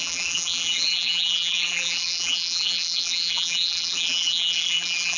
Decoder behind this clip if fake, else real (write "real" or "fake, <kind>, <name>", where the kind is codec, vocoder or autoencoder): fake, vocoder, BigVGAN v2